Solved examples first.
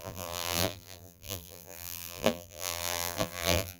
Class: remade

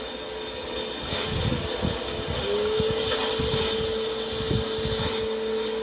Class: recorded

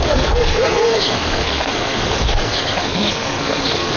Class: remade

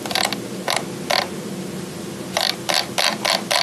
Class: recorded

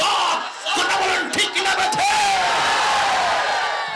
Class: recorded